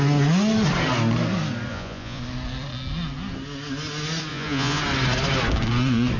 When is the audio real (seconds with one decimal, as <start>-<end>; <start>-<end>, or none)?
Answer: 0.0-1.7; 2.2-4.3; 4.8-6.2